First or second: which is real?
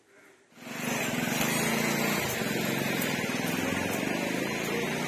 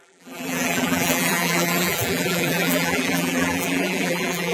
first